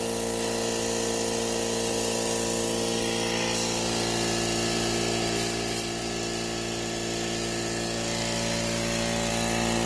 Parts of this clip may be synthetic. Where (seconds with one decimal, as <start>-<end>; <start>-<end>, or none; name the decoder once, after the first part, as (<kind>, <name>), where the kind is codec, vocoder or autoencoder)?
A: none